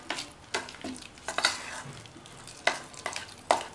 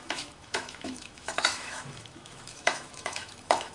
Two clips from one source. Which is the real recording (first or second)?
first